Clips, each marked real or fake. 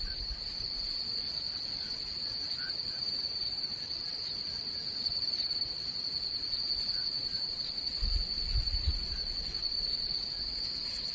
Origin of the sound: real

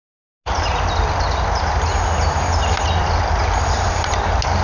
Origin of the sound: real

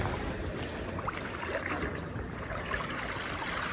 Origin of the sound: real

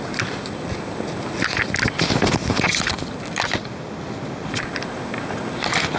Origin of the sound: real